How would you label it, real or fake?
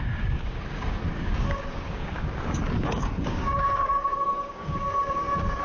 fake